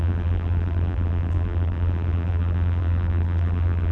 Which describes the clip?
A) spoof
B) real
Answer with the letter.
A